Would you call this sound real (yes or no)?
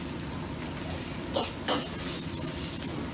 yes